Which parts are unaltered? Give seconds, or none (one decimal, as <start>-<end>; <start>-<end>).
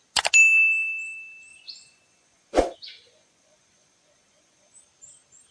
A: 0.0-1.5; 4.8-5.5